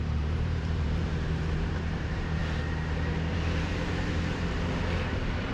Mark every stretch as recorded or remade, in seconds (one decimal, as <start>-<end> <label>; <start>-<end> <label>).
0.0-2.4 remade; 2.4-3.3 recorded; 3.3-5.5 remade